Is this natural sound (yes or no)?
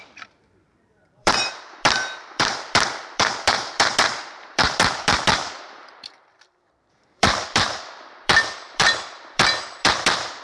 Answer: no